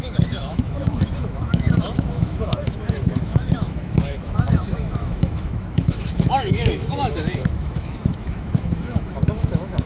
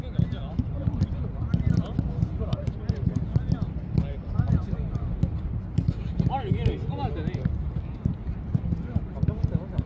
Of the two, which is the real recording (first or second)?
second